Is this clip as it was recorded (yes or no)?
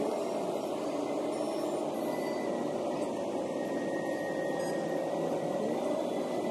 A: yes